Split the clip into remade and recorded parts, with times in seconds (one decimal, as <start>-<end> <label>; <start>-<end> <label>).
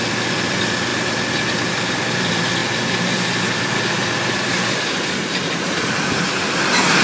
0.0-0.9 remade; 0.9-1.7 recorded; 1.7-7.0 remade